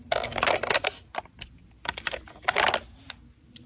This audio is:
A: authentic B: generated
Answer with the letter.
A